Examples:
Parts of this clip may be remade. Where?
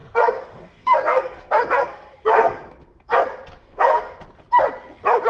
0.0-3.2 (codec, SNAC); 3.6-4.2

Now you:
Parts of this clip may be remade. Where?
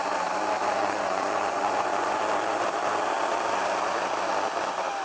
0.8-2.2 (vocoder, Vocos)